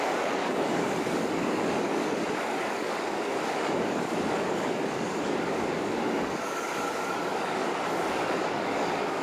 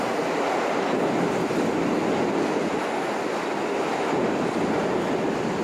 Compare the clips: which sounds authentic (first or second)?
second